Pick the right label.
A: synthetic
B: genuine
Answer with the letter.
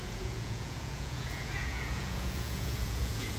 A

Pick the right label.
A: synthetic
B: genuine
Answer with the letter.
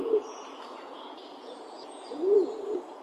A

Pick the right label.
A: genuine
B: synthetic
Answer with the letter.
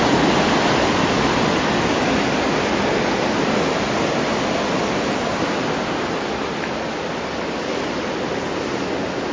A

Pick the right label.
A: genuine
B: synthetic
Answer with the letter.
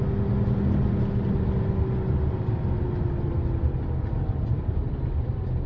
A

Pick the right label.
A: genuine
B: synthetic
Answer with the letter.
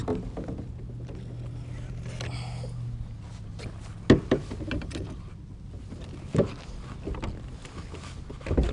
A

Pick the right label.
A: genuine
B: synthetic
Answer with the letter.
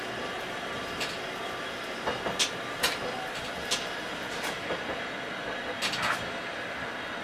A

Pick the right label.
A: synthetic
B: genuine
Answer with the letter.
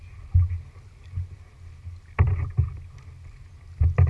B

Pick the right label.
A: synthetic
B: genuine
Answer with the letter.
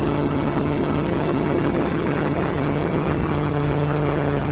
A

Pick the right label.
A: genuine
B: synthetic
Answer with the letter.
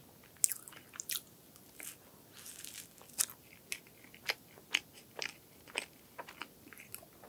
A